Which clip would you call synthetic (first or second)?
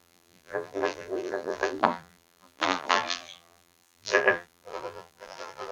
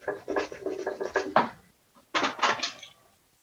first